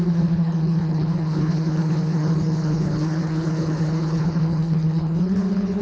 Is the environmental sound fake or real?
fake